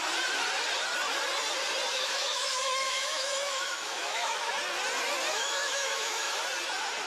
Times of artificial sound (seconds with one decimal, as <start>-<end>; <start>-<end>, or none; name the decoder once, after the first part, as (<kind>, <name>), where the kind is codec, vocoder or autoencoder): 1.9-4.5 (autoencoder, DAC-VAE); 5.3-6.4